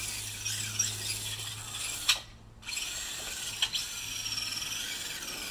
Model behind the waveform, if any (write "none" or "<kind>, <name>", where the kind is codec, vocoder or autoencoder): none